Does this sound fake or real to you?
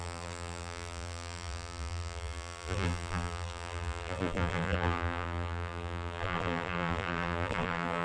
fake